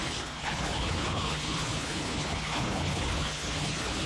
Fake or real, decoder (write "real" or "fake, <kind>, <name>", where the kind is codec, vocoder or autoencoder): fake, codec, HILCodec